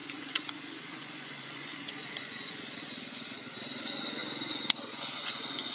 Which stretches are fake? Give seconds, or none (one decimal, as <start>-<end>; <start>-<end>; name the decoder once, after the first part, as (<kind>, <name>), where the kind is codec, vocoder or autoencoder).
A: 0.0-5.7 (vocoder, Vocos)